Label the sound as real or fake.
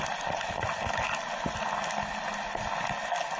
real